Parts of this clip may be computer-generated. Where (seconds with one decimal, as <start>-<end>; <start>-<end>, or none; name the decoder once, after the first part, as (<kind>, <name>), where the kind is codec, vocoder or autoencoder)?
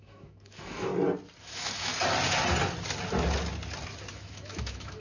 0.0-0.9 (autoencoder, DAC-VAE); 1.4-1.9; 4.1-5.0